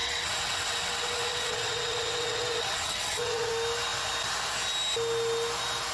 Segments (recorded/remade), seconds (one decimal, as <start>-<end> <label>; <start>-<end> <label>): 0.0-3.5 remade; 3.5-5.9 recorded

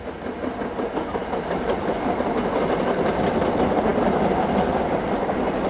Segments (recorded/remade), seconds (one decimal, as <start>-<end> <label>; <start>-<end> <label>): 0.0-5.7 recorded

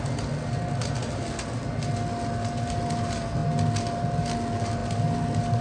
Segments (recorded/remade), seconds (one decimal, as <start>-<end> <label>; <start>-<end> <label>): 0.0-5.6 recorded

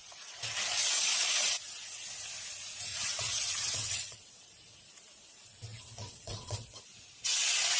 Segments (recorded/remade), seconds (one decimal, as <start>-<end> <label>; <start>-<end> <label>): 0.0-2.9 recorded; 2.9-4.4 remade; 4.4-5.7 recorded; 5.7-6.8 remade; 6.8-7.8 recorded